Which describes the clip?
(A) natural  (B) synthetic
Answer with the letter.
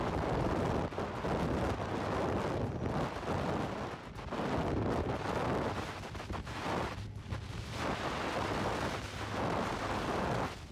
A